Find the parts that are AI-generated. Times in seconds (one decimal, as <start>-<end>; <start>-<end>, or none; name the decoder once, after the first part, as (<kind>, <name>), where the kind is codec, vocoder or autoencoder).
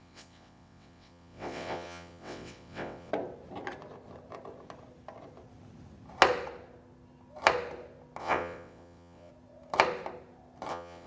0.0-3.1 (vocoder, WaveNeXt); 8.2-9.3; 10.7-11.1